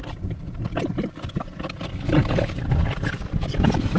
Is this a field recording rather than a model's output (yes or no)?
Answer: yes